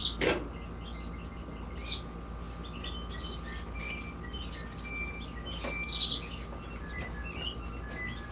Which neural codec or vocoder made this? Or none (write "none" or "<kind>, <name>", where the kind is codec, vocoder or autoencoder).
none